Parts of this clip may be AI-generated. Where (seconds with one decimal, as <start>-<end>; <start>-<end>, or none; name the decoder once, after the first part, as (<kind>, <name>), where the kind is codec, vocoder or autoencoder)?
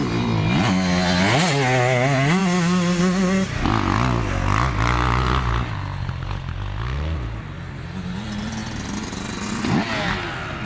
none